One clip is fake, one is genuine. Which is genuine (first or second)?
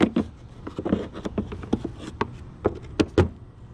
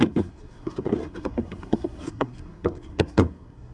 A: first